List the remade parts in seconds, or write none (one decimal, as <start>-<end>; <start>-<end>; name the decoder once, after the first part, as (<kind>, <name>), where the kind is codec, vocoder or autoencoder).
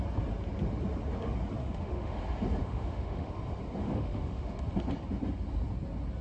1.6-2.2 (autoencoder, DAC-VAE); 2.6-3.3; 3.8-4.6